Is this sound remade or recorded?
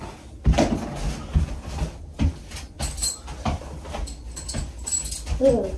recorded